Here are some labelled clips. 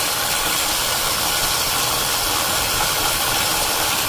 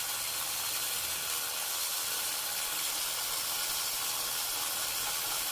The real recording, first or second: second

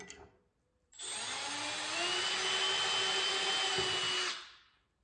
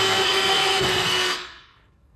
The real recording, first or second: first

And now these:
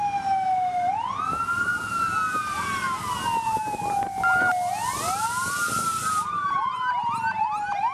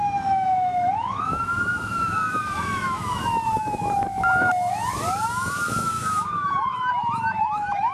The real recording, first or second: first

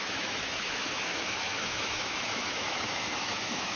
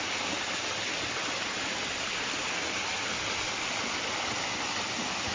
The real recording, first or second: second